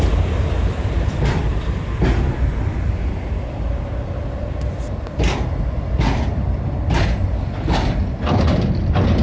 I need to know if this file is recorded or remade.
recorded